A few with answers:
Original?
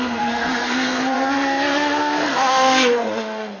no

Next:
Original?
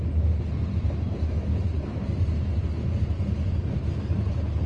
yes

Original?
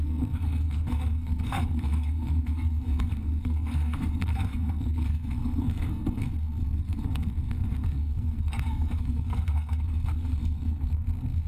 no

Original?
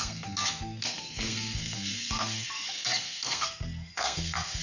no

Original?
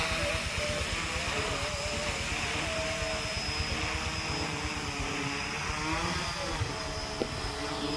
yes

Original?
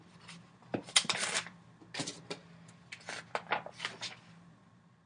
yes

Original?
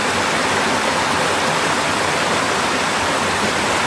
yes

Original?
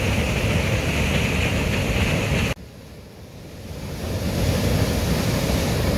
yes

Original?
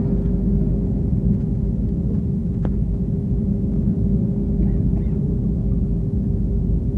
yes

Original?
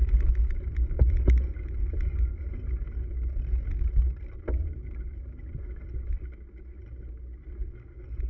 yes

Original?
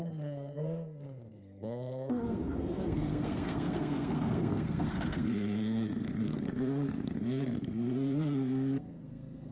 no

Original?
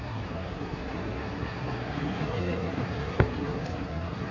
no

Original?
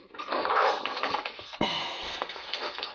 no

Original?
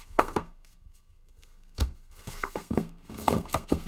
no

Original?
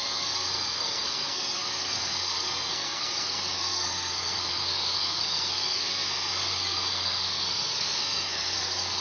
no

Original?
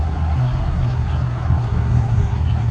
no